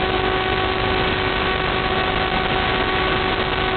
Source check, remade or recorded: recorded